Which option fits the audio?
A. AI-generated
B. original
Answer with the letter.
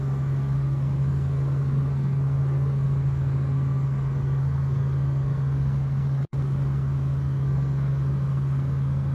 A